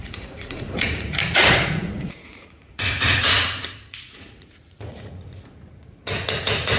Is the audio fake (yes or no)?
yes